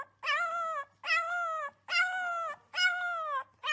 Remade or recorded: recorded